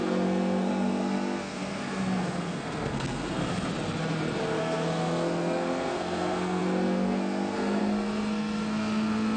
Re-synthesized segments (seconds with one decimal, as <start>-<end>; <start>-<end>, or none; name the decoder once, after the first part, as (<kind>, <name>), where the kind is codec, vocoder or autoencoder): 0.0-3.4 (codec, SNAC); 4.6-9.4